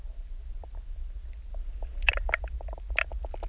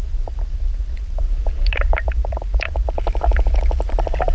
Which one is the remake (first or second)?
second